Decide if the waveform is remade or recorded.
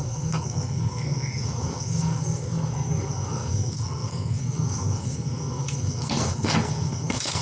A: remade